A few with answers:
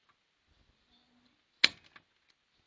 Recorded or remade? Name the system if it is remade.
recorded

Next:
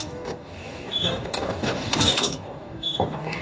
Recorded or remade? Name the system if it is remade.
remade, codec, DAC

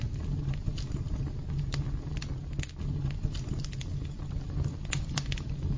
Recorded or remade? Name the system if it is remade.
recorded